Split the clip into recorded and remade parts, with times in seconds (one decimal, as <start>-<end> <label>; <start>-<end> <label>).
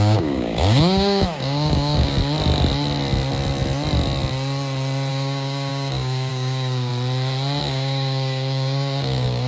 0.0-2.2 remade; 2.2-5.1 recorded; 5.1-6.9 remade; 6.9-7.6 recorded; 7.6-9.5 remade